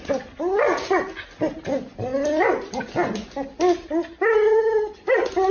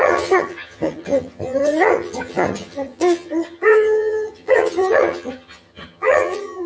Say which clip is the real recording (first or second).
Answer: first